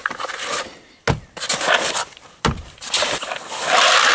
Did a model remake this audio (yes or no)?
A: no